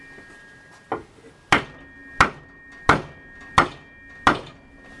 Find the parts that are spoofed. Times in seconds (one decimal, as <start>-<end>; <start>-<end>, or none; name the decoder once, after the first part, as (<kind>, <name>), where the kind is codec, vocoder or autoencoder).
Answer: none